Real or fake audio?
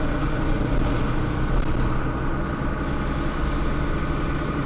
real